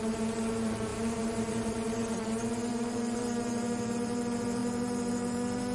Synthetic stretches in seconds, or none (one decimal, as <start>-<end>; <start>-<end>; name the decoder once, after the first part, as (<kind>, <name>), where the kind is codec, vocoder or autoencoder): 0.0-2.0 (vocoder, BigVGAN v2); 2.7-5.7